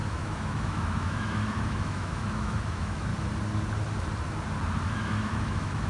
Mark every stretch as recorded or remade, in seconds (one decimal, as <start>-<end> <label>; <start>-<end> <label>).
0.0-3.1 remade; 3.1-4.9 recorded; 4.9-5.9 remade